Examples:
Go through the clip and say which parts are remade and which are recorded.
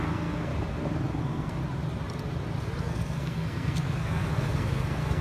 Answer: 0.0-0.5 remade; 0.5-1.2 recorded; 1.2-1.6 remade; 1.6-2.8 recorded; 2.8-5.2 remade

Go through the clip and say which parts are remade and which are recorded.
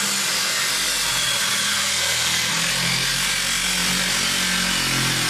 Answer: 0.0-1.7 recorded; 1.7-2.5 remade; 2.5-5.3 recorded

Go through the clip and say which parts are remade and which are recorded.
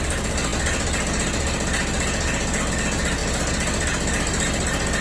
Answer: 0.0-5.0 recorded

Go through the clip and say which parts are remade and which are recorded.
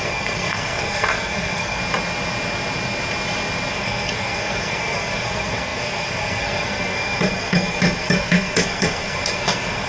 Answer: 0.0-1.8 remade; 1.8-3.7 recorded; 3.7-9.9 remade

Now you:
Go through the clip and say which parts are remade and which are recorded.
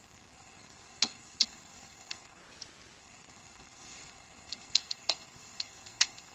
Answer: 0.0-2.4 remade; 2.4-3.0 recorded; 3.0-6.3 remade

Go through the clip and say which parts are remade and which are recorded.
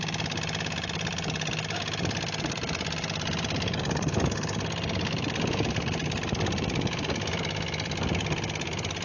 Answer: 0.0-9.0 recorded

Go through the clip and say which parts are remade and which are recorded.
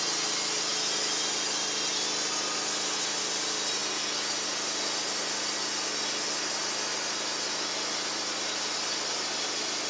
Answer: 0.0-9.9 recorded